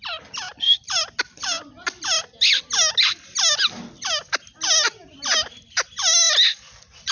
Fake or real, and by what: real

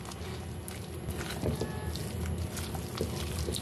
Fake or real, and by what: real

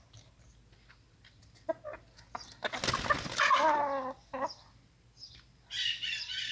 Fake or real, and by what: real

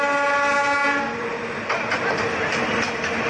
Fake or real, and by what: real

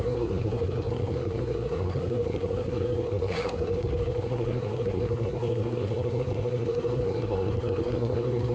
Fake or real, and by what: fake, codec, SNAC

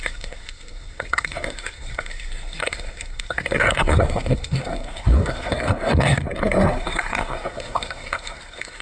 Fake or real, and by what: fake, codec, SNAC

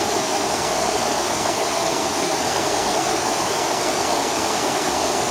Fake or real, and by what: fake, codec, SNAC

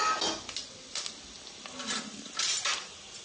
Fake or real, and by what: real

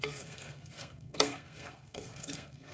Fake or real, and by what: fake, codec, SNAC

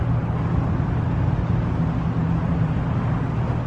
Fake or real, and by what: real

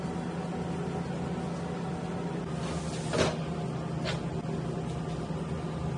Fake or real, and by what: real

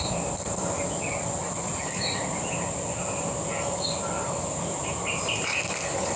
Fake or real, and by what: real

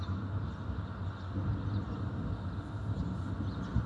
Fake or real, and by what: real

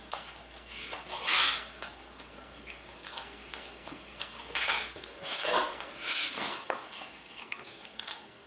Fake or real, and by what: fake, codec, SNAC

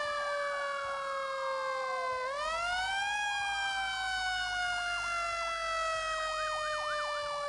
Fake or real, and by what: real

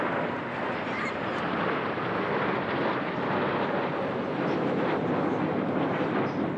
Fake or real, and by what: real